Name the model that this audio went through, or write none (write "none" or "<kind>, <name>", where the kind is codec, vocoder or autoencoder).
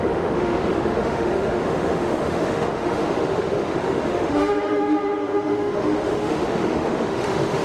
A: autoencoder, DAC-VAE